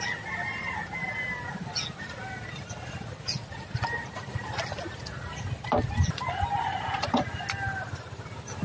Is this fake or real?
real